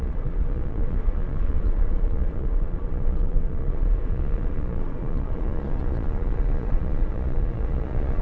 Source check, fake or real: fake